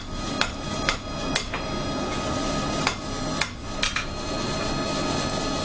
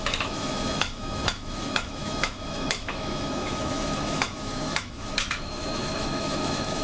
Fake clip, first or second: second